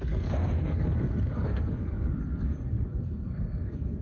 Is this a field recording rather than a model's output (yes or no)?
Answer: no